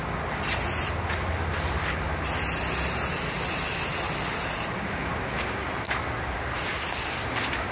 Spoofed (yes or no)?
no